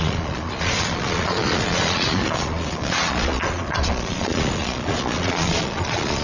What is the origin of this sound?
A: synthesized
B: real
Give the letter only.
A